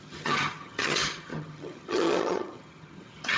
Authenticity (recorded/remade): remade